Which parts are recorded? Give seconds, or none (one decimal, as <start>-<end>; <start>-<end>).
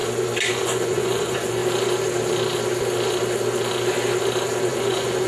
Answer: 0.0-0.5; 1.6-4.7